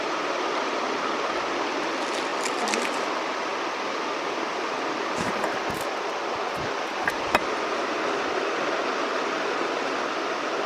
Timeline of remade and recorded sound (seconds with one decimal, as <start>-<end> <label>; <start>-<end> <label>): 0.0-2.3 recorded; 2.3-3.0 remade; 3.0-10.7 recorded

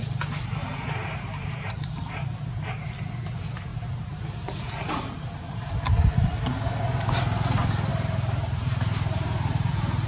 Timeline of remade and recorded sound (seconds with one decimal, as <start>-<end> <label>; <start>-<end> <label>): 0.0-0.6 recorded; 0.6-2.9 remade; 2.9-3.7 recorded; 3.7-5.8 remade; 5.8-7.9 recorded; 7.9-9.7 remade; 9.7-10.1 recorded